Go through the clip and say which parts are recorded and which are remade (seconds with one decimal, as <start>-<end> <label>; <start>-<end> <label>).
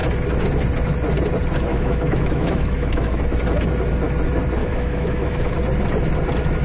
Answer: 0.0-1.7 recorded; 1.7-3.2 remade; 3.2-4.6 recorded; 4.6-5.5 remade; 5.5-6.6 recorded